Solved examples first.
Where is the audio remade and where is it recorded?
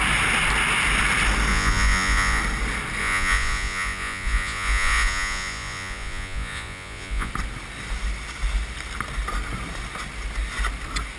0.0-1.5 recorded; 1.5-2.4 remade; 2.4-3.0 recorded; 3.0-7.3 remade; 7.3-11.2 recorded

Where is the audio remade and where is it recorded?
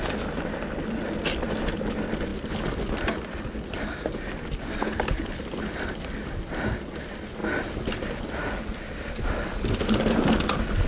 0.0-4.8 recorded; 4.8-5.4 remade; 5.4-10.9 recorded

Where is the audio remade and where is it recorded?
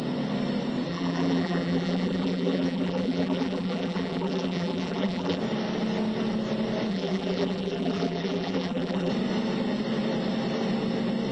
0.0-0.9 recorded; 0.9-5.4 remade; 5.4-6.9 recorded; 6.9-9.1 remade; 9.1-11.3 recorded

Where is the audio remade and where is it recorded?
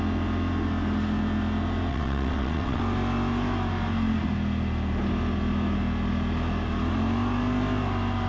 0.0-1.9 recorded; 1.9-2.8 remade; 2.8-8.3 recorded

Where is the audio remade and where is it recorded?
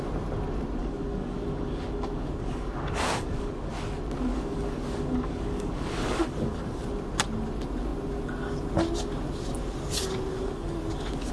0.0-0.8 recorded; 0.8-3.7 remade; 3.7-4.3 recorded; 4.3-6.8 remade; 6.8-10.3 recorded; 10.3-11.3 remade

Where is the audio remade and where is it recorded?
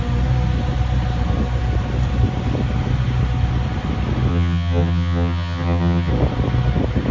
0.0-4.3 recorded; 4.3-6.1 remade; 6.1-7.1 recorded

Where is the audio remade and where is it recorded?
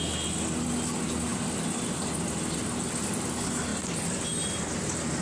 0.0-5.2 recorded